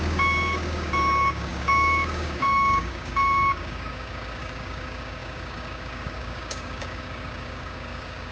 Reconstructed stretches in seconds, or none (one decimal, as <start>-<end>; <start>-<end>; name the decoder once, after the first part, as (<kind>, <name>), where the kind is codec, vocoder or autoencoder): 0.0-8.3 (codec, DAC)